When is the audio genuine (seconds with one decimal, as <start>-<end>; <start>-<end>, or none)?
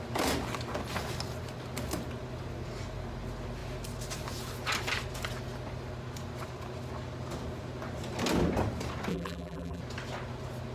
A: 0.0-9.1; 9.8-10.7